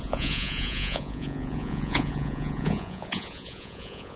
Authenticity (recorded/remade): remade